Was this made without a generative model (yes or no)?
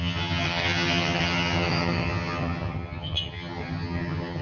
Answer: no